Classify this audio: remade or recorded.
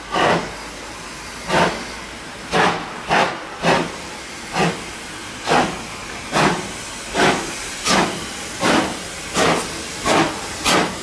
recorded